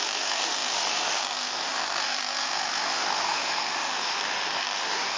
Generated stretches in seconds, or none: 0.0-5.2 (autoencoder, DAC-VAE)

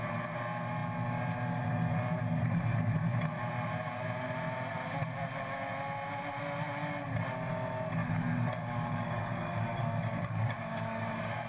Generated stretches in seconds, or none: 8.0-11.5 (codec, DAC)